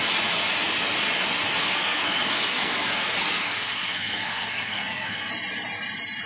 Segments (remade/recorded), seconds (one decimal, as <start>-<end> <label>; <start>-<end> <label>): 0.0-1.6 recorded; 1.6-5.3 remade; 5.3-6.3 recorded